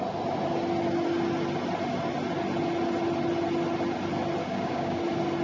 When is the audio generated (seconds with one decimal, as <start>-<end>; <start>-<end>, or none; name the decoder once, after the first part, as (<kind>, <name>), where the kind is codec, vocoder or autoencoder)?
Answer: 4.4-5.0 (codec, DAC)